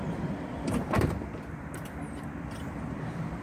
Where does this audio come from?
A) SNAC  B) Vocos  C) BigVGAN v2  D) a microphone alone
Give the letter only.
C